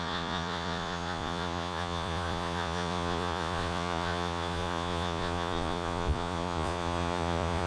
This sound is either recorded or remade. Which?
remade